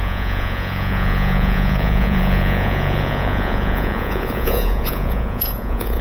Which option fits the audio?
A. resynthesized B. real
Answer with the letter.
A